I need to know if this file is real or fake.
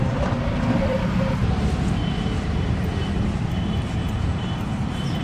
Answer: fake